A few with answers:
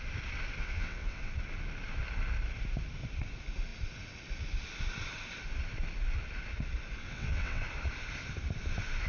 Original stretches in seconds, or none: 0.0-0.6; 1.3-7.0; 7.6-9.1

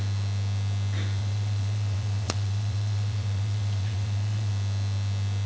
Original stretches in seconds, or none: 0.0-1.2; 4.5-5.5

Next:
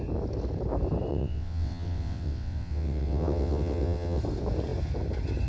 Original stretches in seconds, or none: 0.0-1.1; 4.2-5.5

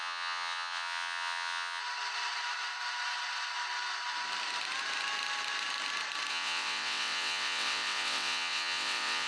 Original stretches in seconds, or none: 1.8-6.3

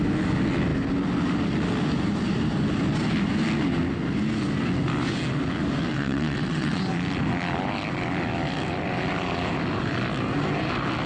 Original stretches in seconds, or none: 0.0-5.9; 6.8-11.1

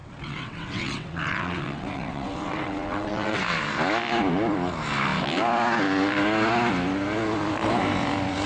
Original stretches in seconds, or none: 3.4-8.5

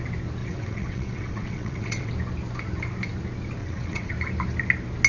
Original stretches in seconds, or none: 0.0-0.4; 2.1-3.6; 4.1-5.1

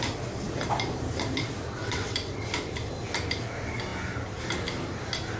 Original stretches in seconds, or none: 0.0-1.8; 2.4-5.4